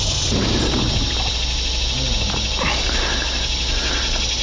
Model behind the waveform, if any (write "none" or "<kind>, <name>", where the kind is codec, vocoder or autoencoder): none